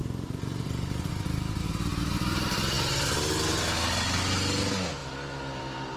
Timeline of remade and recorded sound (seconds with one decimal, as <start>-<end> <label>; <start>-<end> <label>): 0.0-1.1 remade; 1.1-1.9 recorded; 1.9-3.2 remade; 3.2-6.0 recorded